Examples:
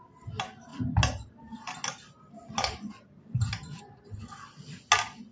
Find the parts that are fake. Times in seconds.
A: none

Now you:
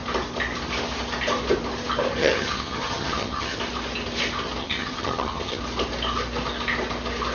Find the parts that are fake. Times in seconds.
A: 2.2-3.6 (vocoder, HiFi-GAN); 4.6-5.6

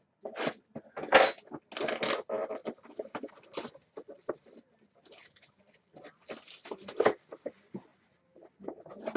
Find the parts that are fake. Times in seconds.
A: none

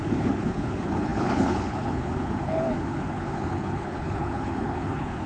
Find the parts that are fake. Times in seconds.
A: 0.0-5.3 (codec, HILCodec)